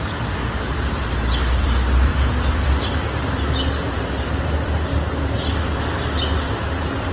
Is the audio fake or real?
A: fake